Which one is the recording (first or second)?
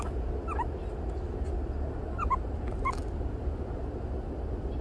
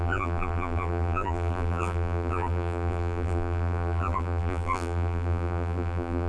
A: first